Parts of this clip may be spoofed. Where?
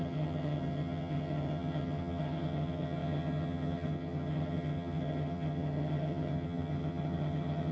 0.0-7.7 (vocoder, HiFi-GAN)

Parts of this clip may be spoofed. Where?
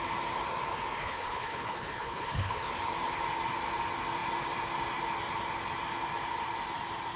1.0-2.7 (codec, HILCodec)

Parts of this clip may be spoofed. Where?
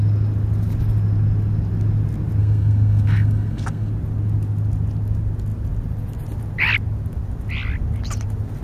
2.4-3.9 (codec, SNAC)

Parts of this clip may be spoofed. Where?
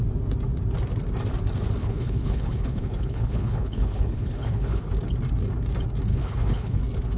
1.8-4.9 (codec, HILCodec); 6.1-6.8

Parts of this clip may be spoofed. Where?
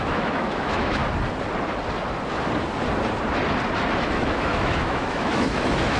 0.0-1.0 (autoencoder, DAC-VAE); 4.0-6.0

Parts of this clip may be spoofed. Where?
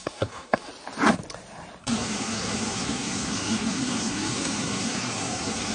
0.0-0.7 (codec, SNAC); 1.8-5.7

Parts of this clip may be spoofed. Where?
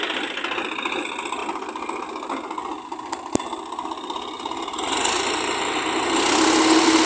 none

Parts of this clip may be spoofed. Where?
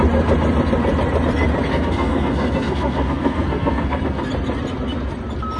1.7-4.0 (codec, SNAC)